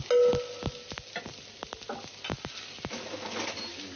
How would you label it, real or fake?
real